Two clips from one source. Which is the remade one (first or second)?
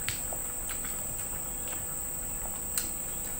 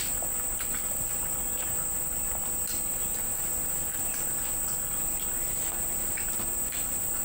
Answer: second